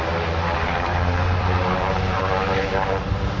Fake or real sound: fake